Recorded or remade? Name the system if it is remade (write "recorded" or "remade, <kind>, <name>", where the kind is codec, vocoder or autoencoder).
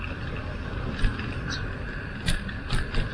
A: recorded